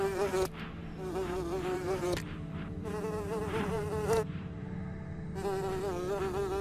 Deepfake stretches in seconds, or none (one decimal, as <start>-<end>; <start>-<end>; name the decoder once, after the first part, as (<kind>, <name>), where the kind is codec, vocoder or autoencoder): 0.8-4.8 (vocoder, BigVGAN v2)